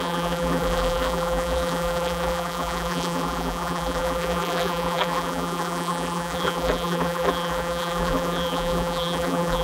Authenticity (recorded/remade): remade